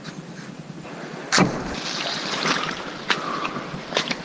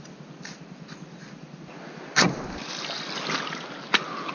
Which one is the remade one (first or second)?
first